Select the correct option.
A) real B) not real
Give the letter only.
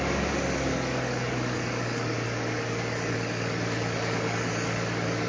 B